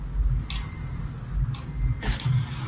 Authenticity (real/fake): real